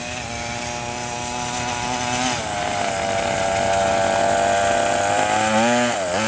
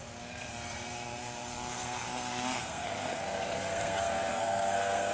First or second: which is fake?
second